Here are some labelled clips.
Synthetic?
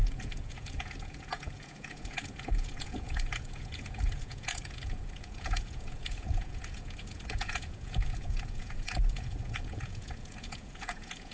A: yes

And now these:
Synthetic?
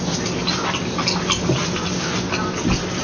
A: no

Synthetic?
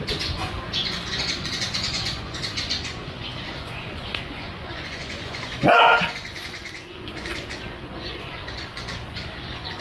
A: yes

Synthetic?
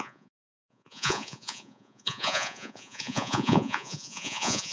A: yes